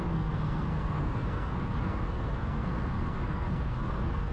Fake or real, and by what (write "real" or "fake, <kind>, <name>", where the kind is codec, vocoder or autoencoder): fake, codec, SNAC